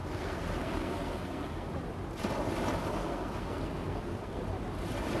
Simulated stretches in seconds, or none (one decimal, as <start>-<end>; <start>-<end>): 0.0-1.7; 2.9-4.4